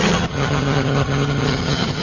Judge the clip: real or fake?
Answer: fake